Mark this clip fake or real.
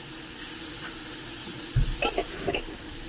real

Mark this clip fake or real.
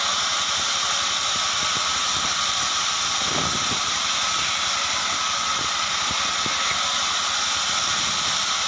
real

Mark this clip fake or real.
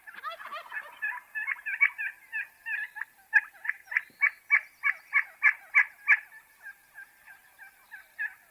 real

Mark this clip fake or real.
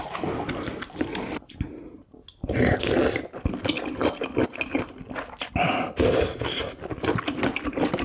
real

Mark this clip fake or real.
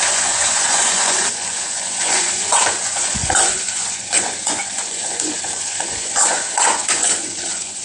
fake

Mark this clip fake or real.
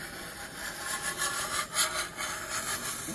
real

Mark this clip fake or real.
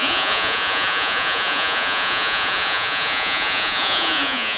fake